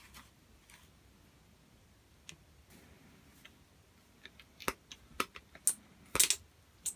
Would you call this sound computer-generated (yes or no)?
no